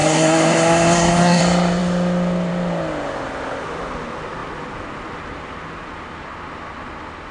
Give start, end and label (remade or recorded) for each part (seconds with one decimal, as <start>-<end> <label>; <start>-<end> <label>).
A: 0.0-1.4 remade; 1.4-7.3 recorded